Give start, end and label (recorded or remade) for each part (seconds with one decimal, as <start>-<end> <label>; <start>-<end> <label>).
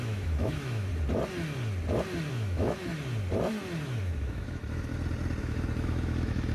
0.0-0.9 remade; 0.9-2.3 recorded; 2.3-2.9 remade; 2.9-4.0 recorded; 4.0-4.9 remade; 4.9-5.4 recorded; 5.4-6.5 remade